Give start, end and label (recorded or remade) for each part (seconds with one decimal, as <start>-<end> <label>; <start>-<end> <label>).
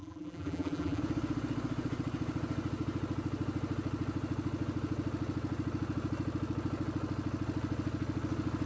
0.0-1.0 remade; 1.0-8.7 recorded